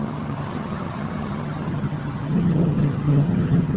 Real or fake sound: fake